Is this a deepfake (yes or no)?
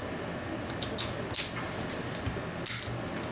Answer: no